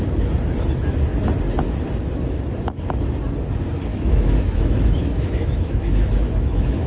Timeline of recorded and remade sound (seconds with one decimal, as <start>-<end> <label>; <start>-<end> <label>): 0.0-3.9 recorded; 3.9-6.9 remade